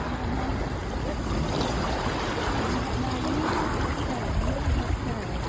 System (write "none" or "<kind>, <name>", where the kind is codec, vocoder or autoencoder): none